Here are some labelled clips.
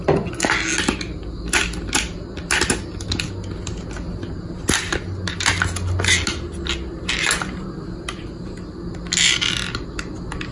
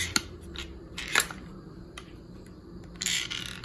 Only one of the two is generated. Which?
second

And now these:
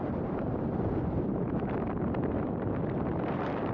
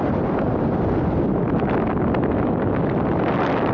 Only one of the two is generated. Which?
first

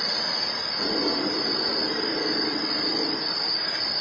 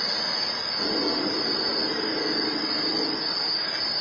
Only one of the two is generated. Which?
first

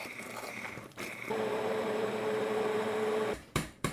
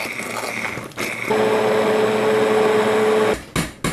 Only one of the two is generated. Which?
first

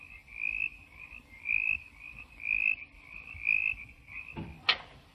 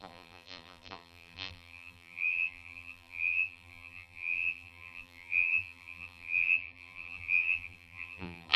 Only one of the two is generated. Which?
second